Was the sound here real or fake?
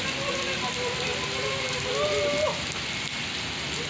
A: real